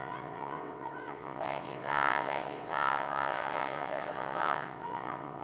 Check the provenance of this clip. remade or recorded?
remade